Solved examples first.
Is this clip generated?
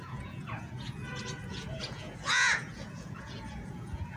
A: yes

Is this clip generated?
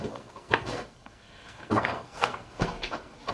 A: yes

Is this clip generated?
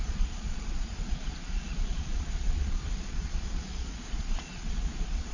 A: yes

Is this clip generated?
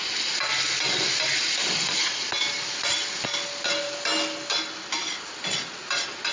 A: no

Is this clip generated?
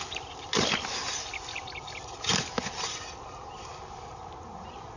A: no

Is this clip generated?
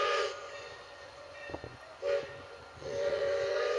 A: yes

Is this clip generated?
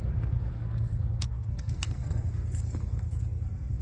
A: yes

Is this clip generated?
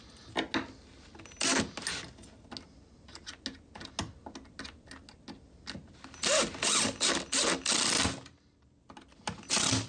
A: no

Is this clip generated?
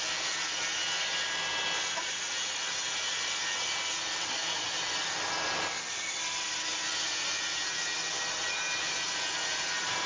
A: no